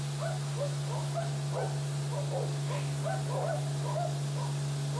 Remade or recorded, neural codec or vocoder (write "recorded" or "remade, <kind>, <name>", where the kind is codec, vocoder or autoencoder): recorded